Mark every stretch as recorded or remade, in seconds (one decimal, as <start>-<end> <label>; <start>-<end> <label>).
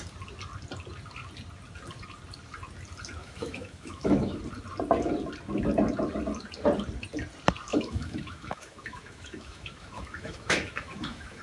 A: 0.0-3.2 recorded; 3.2-4.4 remade; 4.4-7.7 recorded; 7.7-11.4 remade